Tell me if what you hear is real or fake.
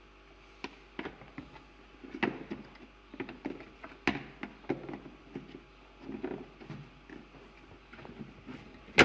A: real